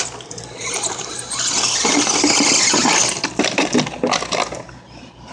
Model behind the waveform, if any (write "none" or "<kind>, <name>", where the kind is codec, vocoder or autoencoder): none